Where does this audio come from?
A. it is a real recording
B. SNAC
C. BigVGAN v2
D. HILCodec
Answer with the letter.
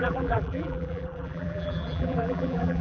C